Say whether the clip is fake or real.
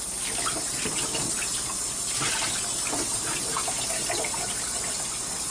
real